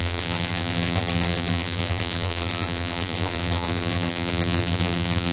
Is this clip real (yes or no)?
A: no